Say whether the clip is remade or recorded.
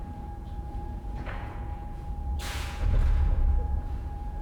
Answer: remade